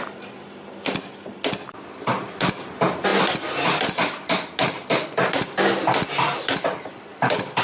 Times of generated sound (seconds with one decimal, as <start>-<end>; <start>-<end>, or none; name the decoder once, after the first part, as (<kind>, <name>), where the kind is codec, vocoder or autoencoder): none